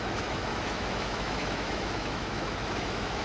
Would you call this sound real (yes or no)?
no